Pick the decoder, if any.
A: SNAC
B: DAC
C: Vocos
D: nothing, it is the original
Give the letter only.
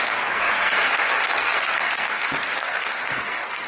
A